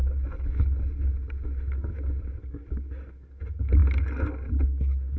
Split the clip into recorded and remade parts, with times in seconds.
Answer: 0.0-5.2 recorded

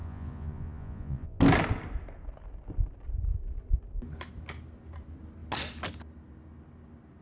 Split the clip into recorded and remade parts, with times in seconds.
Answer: 0.0-1.4 remade; 1.4-7.2 recorded

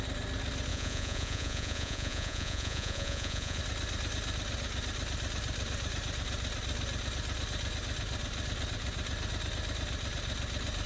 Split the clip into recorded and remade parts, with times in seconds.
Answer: 0.0-0.7 recorded; 0.7-3.6 remade; 3.6-10.9 recorded

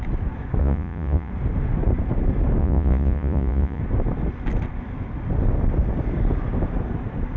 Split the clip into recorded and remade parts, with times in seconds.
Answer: 0.0-0.6 recorded; 0.6-1.3 remade; 1.3-2.6 recorded; 2.6-3.8 remade; 3.8-7.4 recorded

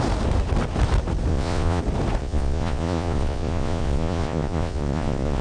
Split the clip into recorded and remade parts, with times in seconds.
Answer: 0.0-1.3 recorded; 1.3-1.8 remade; 1.8-2.2 recorded; 2.2-5.4 remade

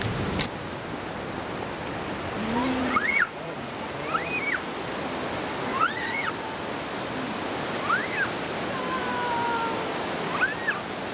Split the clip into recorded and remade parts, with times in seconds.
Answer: 0.0-2.8 recorded; 2.8-3.7 remade; 3.7-5.7 recorded; 5.7-6.3 remade; 6.3-11.1 recorded